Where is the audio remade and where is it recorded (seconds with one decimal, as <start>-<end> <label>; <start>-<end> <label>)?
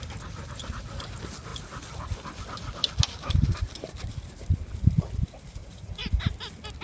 0.0-5.6 recorded; 5.6-6.1 remade; 6.1-6.8 recorded